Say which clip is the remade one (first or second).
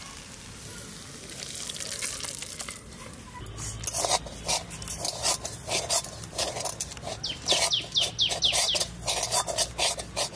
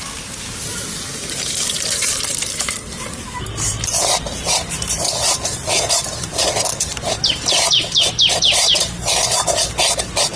second